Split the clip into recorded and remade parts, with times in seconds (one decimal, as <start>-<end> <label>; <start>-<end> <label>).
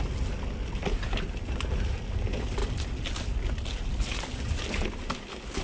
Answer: 0.0-5.6 recorded